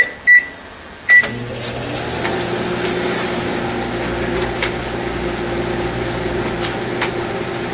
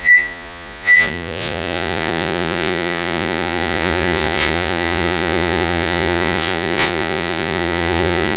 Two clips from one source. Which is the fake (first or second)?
second